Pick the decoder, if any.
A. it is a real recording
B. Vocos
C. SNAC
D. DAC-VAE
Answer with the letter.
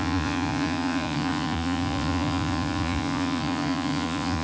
B